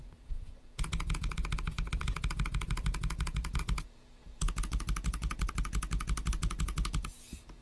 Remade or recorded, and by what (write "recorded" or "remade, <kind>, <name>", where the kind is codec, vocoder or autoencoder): remade, vocoder, Vocos